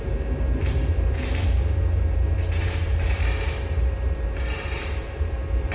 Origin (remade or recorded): remade